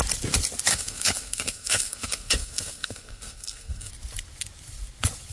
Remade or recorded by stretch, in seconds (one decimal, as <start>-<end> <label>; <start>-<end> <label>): 0.0-0.7 recorded; 0.7-3.9 remade; 3.9-5.3 recorded